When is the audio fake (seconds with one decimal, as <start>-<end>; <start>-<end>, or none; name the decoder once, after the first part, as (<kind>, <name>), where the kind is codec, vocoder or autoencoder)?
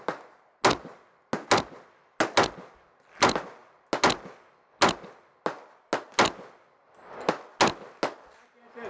none